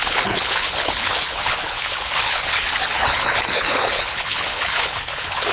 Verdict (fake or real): fake